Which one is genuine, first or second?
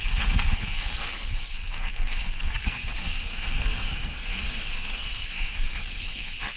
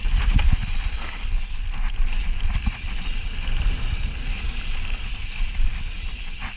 second